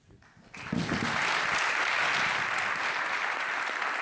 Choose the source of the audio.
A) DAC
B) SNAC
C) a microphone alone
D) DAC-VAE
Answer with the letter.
C